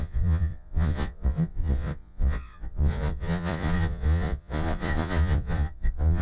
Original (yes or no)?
no